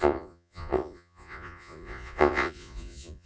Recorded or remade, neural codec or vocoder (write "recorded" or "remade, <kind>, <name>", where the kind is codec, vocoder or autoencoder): remade, vocoder, Vocos